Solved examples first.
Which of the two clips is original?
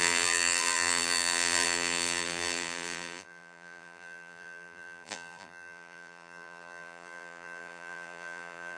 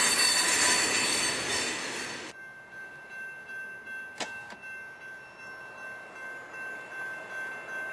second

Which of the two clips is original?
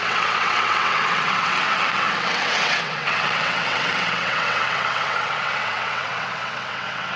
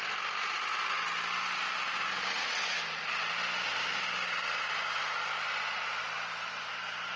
second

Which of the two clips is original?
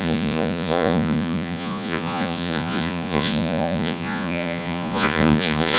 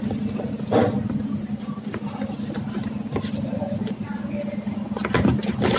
second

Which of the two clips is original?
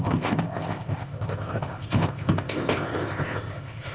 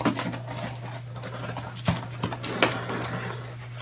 second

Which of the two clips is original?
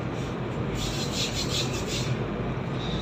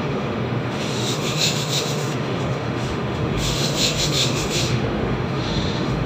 first